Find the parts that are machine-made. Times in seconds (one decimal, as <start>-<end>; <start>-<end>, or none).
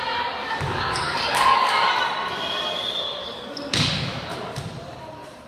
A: 0.4-1.9; 3.2-4.6